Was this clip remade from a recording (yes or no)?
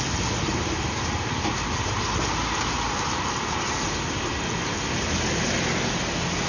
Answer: no